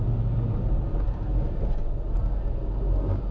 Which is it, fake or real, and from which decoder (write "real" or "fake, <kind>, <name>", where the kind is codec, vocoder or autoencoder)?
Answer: real